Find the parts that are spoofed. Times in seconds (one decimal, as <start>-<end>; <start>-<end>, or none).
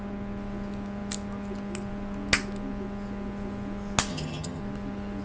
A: 4.1-4.6